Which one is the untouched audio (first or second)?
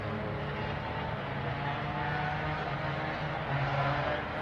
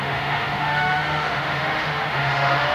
first